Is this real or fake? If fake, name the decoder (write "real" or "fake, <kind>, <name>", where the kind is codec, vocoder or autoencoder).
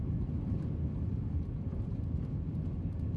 real